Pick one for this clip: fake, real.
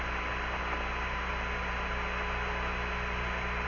real